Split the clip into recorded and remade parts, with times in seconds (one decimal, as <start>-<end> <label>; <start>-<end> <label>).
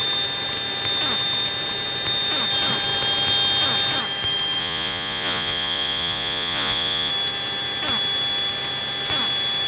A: 0.0-4.6 recorded; 4.6-7.1 remade; 7.1-9.7 recorded